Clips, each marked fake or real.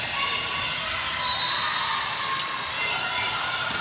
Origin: real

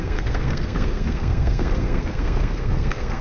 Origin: fake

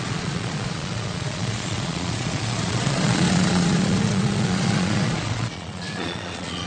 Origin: fake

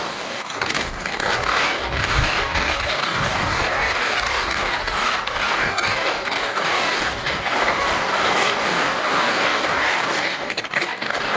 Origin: fake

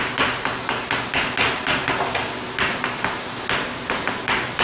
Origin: real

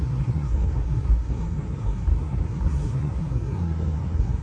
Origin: fake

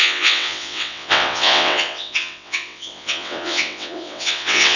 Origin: fake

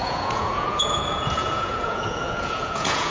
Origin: fake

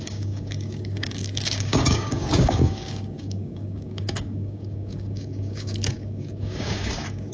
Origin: fake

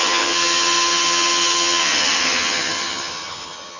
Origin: fake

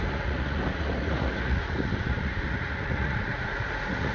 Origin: fake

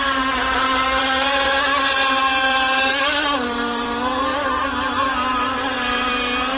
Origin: fake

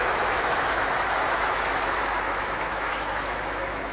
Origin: fake